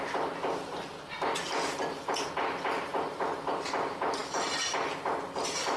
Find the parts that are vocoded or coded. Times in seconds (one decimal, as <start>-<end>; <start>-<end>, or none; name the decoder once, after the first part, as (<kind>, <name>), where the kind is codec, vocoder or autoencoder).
none